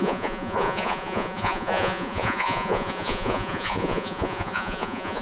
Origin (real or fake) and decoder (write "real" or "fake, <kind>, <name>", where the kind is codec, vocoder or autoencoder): fake, vocoder, Vocos